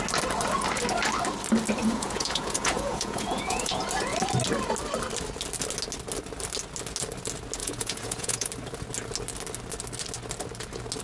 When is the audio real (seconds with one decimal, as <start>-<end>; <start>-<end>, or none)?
0.0-1.8; 3.8-7.6; 8.5-11.0